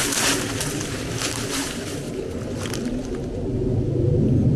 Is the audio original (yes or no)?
yes